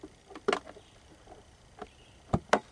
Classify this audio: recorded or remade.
recorded